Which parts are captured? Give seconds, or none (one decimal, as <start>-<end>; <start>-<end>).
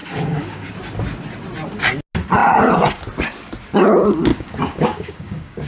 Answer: 0.7-4.3